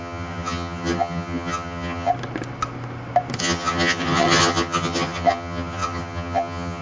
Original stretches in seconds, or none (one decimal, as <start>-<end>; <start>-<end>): 2.1-3.4